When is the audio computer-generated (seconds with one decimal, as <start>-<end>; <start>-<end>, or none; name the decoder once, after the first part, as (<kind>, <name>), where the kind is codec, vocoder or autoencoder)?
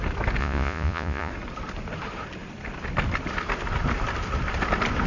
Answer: 0.4-1.3 (vocoder, Vocos)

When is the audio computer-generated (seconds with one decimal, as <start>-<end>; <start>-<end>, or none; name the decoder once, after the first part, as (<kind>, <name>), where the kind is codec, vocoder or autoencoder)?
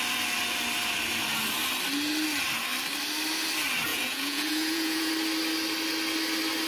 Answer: 3.9-5.1 (vocoder, Vocos)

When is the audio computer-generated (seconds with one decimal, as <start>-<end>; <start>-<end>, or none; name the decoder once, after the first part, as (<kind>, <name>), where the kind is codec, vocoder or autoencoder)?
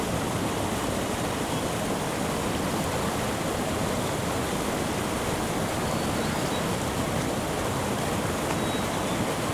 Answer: none